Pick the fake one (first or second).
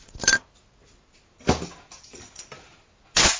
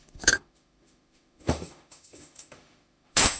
second